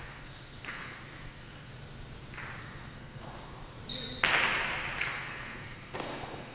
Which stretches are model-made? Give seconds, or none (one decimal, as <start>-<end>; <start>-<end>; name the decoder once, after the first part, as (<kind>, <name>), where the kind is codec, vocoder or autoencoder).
0.0-1.7 (codec, SNAC); 2.6-3.8; 5.0-6.5